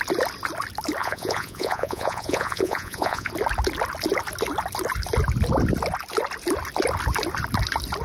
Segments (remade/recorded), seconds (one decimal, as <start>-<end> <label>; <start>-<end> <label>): 0.0-1.0 recorded; 1.0-3.3 remade; 3.3-8.0 recorded